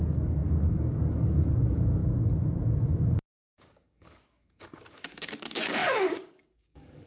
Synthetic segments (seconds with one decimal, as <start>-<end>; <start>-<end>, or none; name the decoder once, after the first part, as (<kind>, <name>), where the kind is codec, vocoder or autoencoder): 0.0-2.0 (codec, DAC); 3.1-7.1